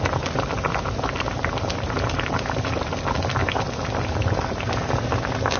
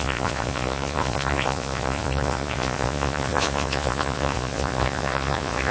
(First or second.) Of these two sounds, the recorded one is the first